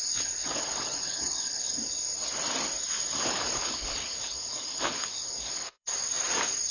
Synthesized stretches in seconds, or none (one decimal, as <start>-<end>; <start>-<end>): 0.0-2.1; 3.2-5.9